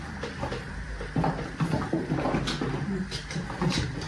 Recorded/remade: recorded